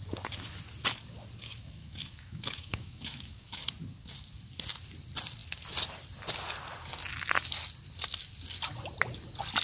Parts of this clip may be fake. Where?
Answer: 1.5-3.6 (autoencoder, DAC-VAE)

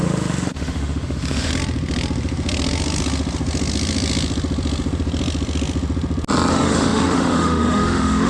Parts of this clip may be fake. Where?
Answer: 0.0-1.5 (autoencoder, DAC-VAE); 6.5-8.3

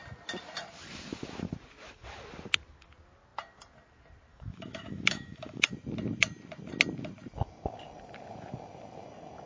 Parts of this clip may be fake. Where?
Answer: 4.3-5.7 (autoencoder, DAC-VAE)

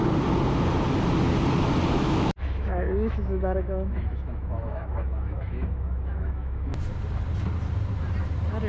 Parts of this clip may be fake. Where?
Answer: 1.9-6.7 (autoencoder, DAC-VAE)

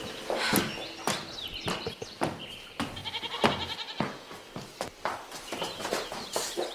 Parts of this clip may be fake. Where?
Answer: none